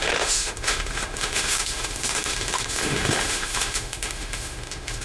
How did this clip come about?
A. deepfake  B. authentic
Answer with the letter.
A